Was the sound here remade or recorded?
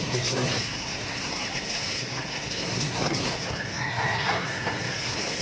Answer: remade